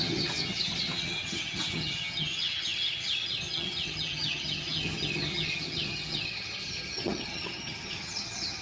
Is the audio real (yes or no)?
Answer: no